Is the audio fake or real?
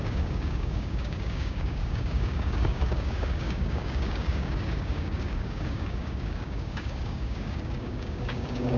fake